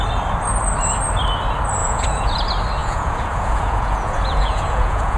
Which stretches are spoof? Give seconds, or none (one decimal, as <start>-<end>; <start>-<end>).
1.8-2.4; 2.8-5.2